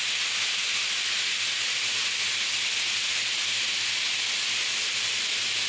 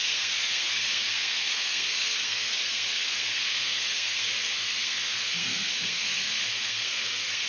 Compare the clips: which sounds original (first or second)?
first